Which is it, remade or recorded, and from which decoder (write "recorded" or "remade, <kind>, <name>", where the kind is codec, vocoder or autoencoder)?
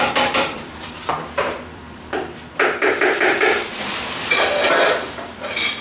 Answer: remade, vocoder, BigVGAN v2